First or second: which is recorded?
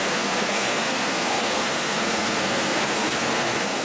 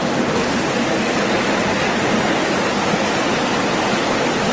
second